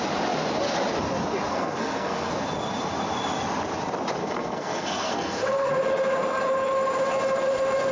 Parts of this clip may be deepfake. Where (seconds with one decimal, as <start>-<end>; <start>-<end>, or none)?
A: 1.5-2.3; 4.2-5.7